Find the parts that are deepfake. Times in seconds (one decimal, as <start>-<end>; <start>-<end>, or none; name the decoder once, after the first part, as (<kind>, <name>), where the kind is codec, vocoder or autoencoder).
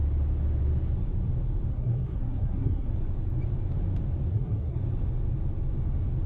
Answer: 1.7-2.9 (codec, SNAC); 4.3-4.8